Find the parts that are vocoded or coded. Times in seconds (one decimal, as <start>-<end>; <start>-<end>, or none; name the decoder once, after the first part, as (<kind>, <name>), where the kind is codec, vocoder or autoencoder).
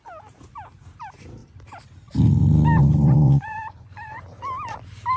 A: 2.8-4.2 (vocoder, Vocos)